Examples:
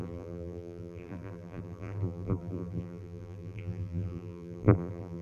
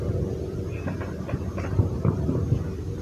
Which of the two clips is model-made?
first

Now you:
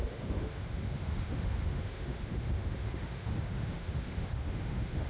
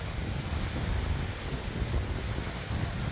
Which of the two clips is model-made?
first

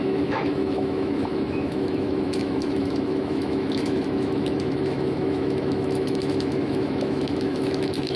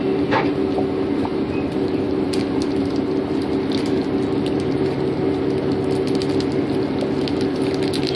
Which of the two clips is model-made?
first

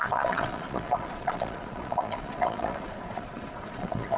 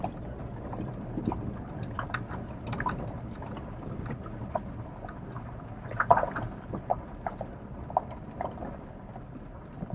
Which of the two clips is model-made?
first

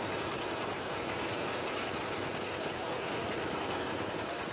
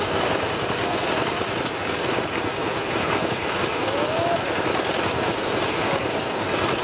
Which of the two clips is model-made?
second